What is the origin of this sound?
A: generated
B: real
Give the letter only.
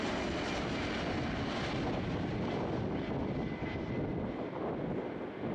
B